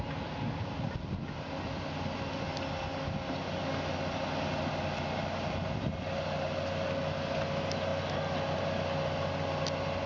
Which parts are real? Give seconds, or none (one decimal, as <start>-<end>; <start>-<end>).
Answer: 0.0-10.1